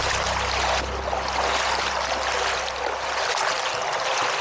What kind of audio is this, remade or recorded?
recorded